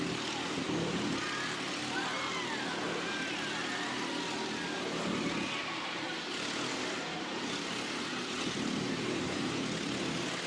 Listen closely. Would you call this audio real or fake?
real